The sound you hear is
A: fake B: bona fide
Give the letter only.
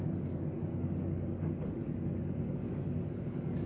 A